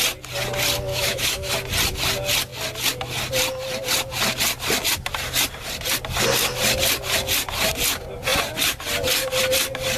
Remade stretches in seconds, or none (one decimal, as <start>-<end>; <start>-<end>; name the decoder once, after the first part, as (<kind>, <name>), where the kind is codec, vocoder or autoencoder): 0.9-1.5 (autoencoder, DAC-VAE)